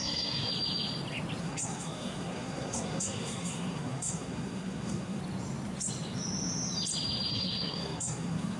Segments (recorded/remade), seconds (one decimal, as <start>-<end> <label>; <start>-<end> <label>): 0.0-0.5 remade; 0.5-1.4 recorded; 1.4-5.2 remade; 5.2-7.3 recorded; 7.3-8.6 remade